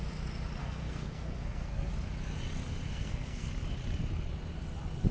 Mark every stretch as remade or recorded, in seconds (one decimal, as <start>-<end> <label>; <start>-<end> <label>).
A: 0.0-0.6 recorded; 0.6-1.9 remade; 1.9-2.9 recorded; 2.9-3.5 remade; 3.5-5.1 recorded